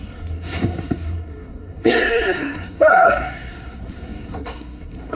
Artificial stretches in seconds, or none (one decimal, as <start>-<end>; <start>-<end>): 0.0-5.1